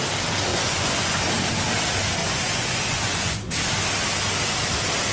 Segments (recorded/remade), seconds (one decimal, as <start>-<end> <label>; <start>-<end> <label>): 0.0-0.5 recorded; 0.5-1.2 remade; 1.2-2.2 recorded; 2.2-3.5 remade; 3.5-5.1 recorded